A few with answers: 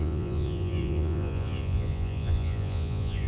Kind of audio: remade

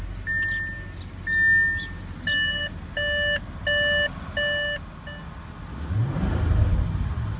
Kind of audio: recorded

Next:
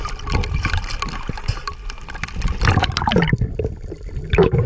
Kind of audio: recorded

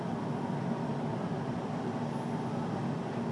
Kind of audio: recorded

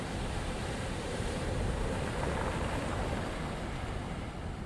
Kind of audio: recorded